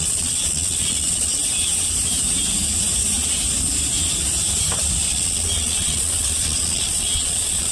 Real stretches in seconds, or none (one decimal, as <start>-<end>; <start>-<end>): 1.4-5.1